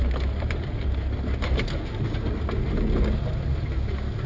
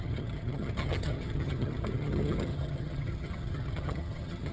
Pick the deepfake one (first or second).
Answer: second